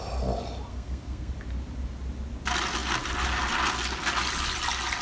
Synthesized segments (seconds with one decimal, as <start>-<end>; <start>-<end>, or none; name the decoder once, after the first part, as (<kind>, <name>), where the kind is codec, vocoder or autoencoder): 0.7-1.3 (codec, SNAC)